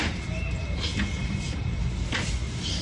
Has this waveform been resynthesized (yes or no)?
no